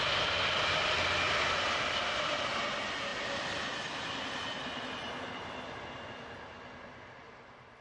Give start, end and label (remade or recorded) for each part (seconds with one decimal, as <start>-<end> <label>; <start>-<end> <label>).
0.0-7.8 recorded

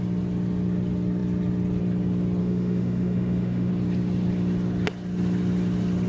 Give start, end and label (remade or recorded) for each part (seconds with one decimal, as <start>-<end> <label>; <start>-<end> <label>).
0.0-2.4 recorded; 2.4-3.7 remade; 3.7-6.1 recorded

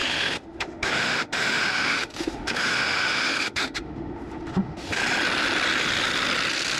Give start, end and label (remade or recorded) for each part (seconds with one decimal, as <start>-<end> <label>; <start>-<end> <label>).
0.0-5.0 remade; 5.0-6.8 recorded

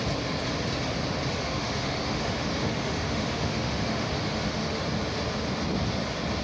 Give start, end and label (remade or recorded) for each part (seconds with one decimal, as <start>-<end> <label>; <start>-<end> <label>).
0.0-1.4 recorded; 1.4-4.8 remade; 4.8-6.4 recorded

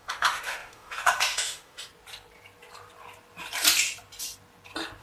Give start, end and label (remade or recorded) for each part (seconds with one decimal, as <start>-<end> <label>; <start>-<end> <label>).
0.0-1.9 remade; 1.9-5.0 recorded

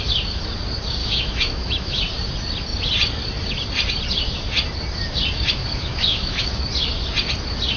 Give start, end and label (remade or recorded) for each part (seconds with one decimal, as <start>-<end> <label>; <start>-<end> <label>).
0.0-1.0 recorded; 1.0-2.0 remade; 2.0-5.6 recorded; 5.6-6.5 remade; 6.5-7.8 recorded

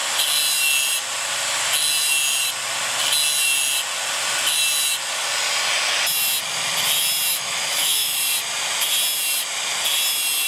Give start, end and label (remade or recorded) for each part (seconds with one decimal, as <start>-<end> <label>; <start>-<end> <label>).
0.0-7.3 recorded; 7.3-8.2 remade; 8.2-10.5 recorded

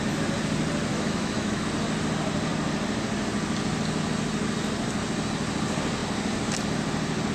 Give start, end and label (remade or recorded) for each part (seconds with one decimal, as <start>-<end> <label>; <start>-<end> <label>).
0.0-0.9 recorded; 0.9-1.6 remade; 1.6-7.3 recorded